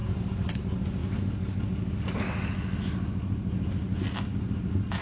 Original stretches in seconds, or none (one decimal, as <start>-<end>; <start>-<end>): 0.6-5.0

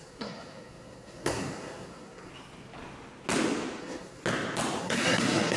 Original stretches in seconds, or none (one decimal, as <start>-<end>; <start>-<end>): 2.3-3.8; 4.2-4.8